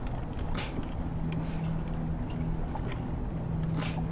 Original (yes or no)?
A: yes